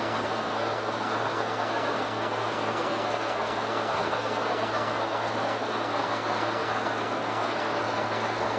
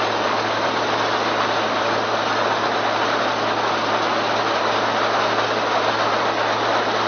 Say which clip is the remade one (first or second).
first